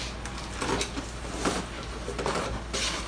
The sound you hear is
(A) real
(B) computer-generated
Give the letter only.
A